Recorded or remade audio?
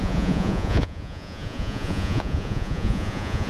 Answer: remade